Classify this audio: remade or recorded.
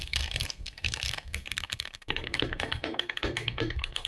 remade